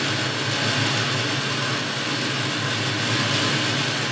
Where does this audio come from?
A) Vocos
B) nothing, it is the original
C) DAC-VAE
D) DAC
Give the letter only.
B